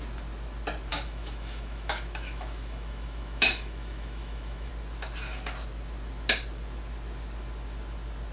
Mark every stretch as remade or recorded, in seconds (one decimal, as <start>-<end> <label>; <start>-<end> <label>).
0.0-0.9 recorded; 0.9-4.7 remade; 4.7-8.3 recorded